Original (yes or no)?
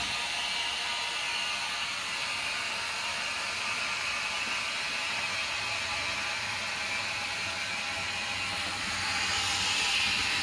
yes